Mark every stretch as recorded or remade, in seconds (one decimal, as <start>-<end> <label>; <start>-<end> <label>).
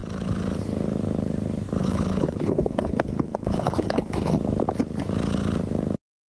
0.0-1.8 recorded; 1.8-4.4 remade; 4.4-6.3 recorded